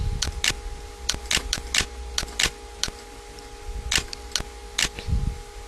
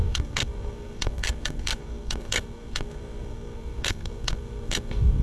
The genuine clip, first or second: first